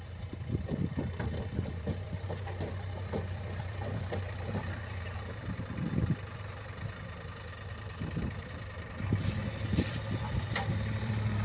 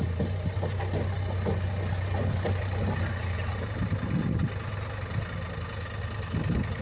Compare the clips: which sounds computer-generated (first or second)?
first